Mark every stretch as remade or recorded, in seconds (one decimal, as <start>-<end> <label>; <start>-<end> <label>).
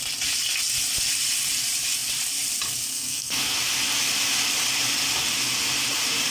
0.0-2.9 recorded; 2.9-3.6 remade; 3.6-6.3 recorded